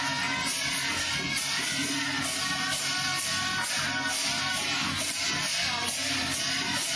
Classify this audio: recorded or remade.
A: recorded